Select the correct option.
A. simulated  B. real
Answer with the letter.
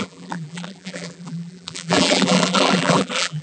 A